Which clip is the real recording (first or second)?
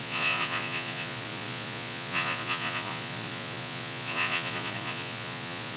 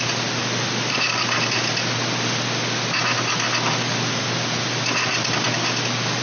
second